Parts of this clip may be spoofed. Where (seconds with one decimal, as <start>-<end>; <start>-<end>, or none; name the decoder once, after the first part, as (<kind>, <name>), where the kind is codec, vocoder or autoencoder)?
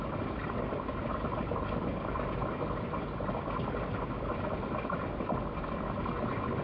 0.0-2.4 (vocoder, BigVGAN v2)